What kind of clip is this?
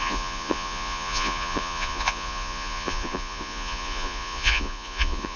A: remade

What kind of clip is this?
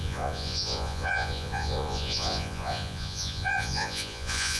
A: remade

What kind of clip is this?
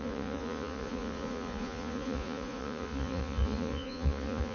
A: remade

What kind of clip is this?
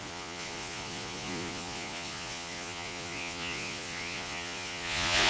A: remade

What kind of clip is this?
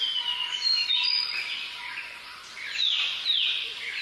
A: remade